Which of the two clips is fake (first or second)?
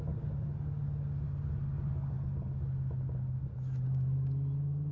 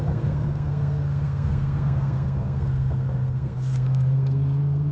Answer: second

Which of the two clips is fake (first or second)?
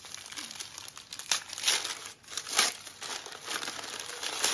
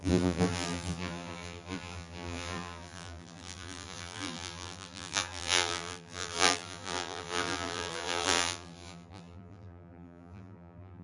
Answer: second